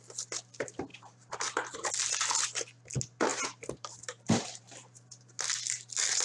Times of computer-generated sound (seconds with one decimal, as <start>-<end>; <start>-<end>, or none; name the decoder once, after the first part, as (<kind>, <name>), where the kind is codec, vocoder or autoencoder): 0.9-1.9 (vocoder, BigVGAN v2); 3.3-5.4